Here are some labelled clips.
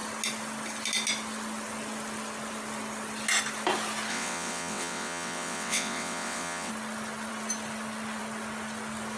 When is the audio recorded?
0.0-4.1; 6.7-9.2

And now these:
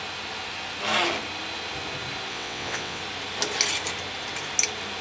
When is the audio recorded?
0.0-2.3; 3.0-5.0

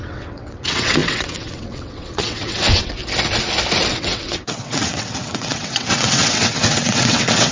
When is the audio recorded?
3.0-3.9